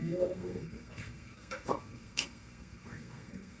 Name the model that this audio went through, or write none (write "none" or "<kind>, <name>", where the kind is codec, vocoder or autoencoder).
codec, SNAC